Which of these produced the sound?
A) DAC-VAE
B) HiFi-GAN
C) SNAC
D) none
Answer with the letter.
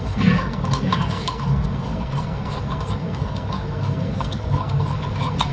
C